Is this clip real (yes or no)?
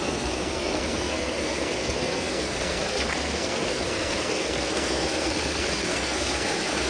no